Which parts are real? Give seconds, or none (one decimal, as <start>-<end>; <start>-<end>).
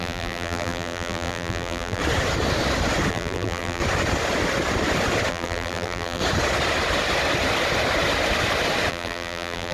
2.0-3.1; 3.8-5.3; 6.2-8.9